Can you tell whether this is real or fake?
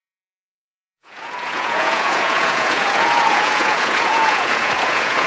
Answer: fake